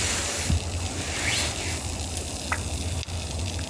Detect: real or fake real